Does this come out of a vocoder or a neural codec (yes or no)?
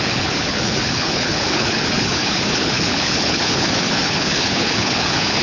yes